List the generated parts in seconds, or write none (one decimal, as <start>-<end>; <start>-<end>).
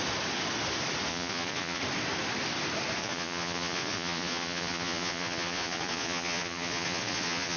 1.1-1.8; 3.0-7.6